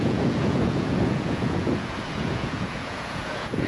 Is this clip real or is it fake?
fake